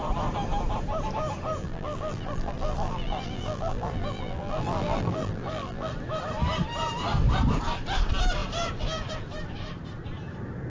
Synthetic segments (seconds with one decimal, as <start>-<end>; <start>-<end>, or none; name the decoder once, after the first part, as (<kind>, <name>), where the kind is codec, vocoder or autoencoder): 1.6-5.9 (vocoder, BigVGAN v2)